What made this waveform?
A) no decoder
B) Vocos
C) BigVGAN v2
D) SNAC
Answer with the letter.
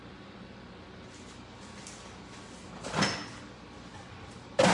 A